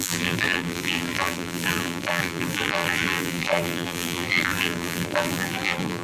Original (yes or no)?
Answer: no